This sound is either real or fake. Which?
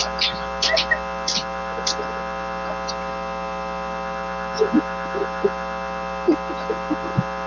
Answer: real